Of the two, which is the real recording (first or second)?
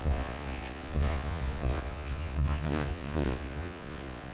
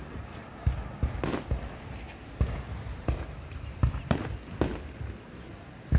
second